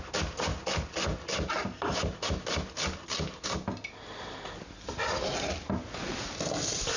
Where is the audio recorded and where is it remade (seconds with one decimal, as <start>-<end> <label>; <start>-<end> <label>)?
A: 0.0-7.0 recorded